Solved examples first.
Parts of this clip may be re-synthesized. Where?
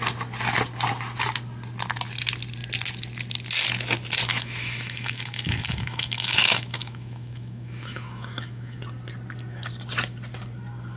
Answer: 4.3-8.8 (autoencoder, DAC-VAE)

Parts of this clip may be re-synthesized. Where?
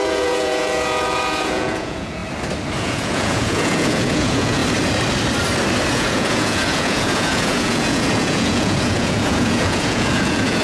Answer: 0.0-2.2 (vocoder, Vocos); 2.8-4.6; 5.9-10.6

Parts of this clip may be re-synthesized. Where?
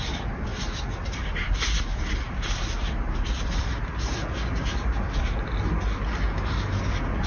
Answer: none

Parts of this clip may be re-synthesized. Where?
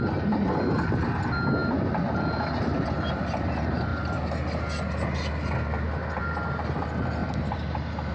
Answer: none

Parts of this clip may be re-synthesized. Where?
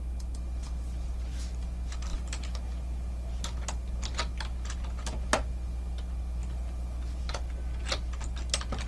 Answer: 2.1-3.3 (vocoder, BigVGAN v2); 6.4-7.2